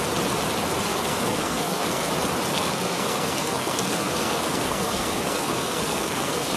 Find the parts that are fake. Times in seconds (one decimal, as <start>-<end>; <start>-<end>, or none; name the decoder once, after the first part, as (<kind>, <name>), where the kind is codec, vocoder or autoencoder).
0.9-2.1 (codec, SNAC); 2.5-6.6